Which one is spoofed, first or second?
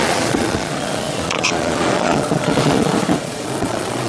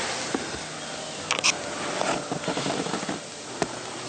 first